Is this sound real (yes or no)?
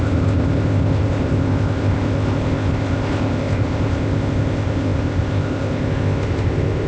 no